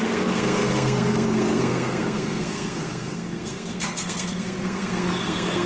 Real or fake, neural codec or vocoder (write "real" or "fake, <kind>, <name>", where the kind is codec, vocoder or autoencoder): fake, codec, SNAC